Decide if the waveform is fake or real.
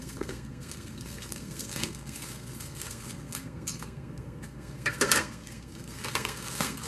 fake